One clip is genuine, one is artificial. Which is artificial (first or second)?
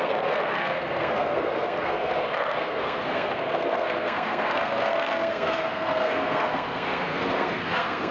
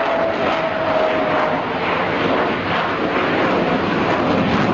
first